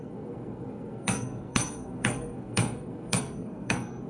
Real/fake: fake